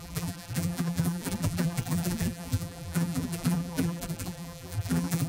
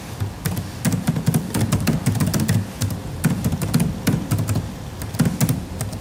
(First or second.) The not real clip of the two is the first